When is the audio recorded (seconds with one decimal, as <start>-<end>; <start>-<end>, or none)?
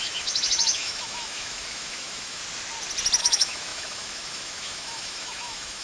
2.4-3.2